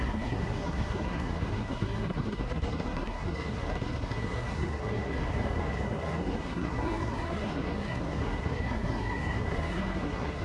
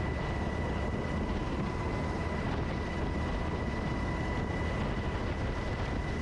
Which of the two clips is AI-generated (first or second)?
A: first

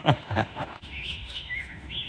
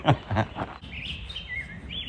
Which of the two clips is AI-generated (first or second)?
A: first